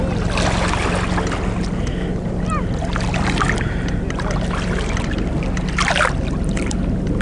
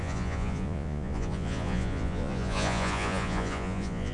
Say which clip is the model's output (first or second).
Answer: second